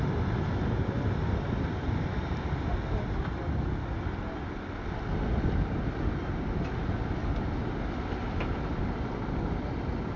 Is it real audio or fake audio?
real